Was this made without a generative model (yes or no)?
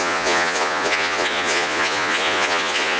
no